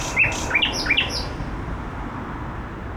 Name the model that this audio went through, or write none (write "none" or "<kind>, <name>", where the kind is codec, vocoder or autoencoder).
none